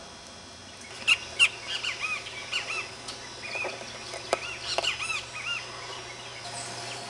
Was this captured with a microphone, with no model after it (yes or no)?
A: yes